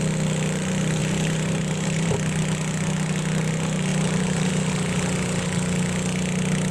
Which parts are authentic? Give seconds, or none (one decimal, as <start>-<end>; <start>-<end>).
0.0-1.0; 2.1-3.9; 4.5-6.7